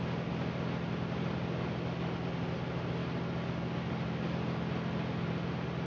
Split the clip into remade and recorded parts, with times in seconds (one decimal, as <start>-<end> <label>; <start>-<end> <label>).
0.0-5.9 recorded